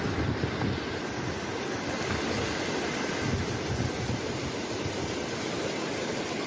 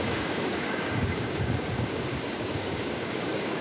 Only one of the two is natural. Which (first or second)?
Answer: first